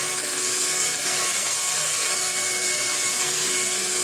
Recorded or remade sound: remade